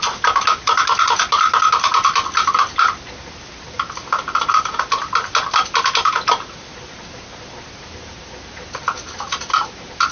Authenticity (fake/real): real